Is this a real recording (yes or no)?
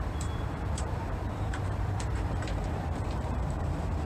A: no